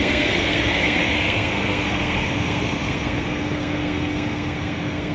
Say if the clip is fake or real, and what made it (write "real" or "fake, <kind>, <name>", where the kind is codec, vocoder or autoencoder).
fake, codec, SNAC